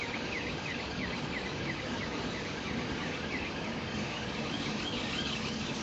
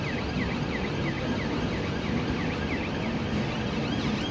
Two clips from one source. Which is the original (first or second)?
second